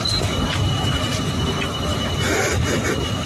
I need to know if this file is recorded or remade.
recorded